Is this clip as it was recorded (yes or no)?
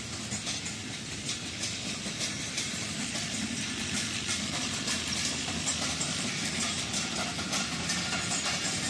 yes